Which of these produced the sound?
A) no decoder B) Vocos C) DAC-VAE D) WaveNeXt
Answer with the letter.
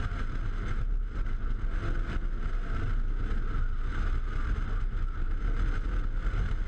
A